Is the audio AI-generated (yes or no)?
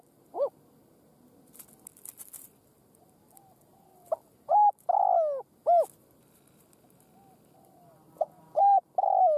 no